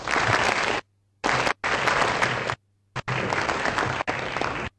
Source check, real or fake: real